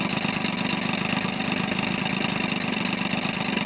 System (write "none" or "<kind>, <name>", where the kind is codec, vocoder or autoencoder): none